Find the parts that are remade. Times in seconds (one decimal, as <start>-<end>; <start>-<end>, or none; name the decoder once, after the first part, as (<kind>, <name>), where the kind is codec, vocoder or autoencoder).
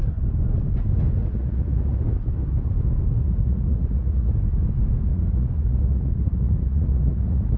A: 1.2-2.0 (vocoder, Vocos); 3.2-4.3; 5.1-7.6